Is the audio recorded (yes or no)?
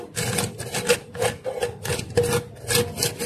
yes